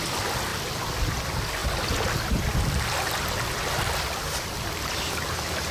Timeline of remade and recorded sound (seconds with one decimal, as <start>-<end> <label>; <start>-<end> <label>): 0.0-5.7 recorded